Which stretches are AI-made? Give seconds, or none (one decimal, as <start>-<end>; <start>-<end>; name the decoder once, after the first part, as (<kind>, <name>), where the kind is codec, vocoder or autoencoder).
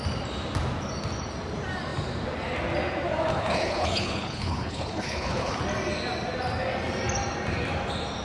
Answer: 3.3-5.6 (codec, HILCodec)